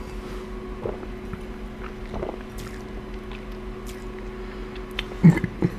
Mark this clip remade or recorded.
recorded